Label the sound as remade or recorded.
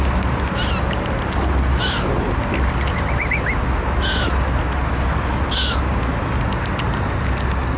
recorded